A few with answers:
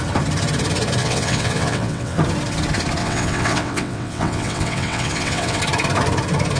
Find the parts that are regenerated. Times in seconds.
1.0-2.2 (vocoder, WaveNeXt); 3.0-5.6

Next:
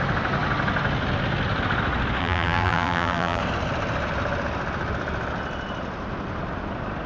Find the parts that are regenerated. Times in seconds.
2.2-3.4 (vocoder, BigVGAN v2)

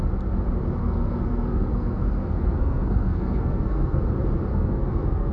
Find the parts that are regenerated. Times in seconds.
0.8-4.0 (codec, SNAC); 4.5-5.3

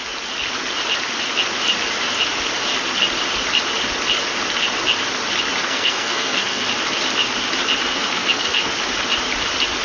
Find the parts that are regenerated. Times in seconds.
5.6-6.7 (codec, SNAC); 7.8-8.7

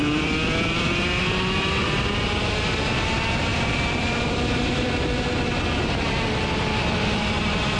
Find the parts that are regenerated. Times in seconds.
0.0-0.9 (vocoder, BigVGAN v2); 3.5-4.9

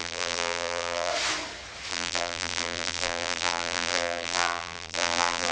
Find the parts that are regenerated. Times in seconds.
0.0-1.1 (vocoder, BigVGAN v2); 1.9-5.5

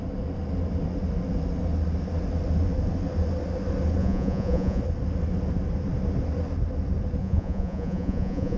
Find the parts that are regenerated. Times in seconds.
4.0-4.8 (vocoder, Vocos); 7.2-8.6

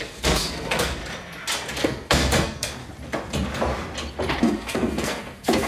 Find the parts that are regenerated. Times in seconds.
0.0-1.0 (codec, SNAC); 1.8-2.8; 4.4-5.7